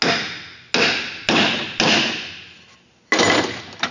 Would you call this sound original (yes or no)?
yes